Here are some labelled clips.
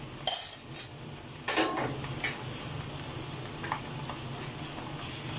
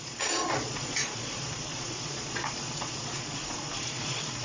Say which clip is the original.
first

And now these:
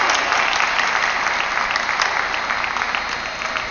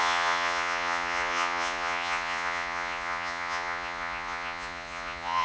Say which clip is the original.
first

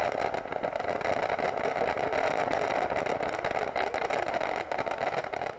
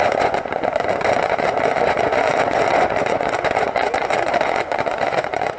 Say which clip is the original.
first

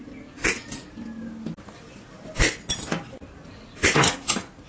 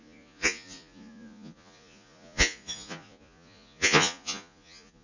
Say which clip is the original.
first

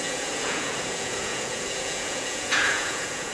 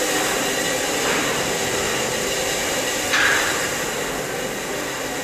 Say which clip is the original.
second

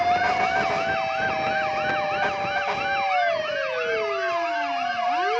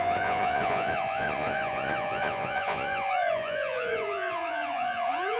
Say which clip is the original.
first